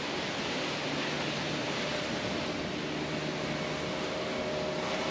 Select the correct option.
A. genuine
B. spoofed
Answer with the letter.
A